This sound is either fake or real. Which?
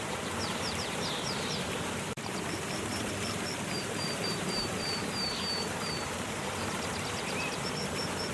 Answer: fake